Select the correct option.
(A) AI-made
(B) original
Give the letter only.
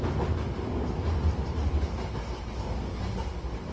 B